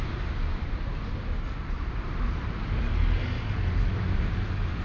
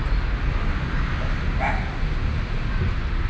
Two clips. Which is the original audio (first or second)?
second